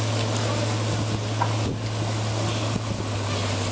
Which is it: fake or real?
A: real